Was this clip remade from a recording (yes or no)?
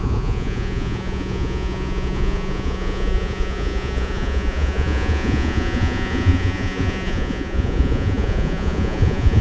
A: yes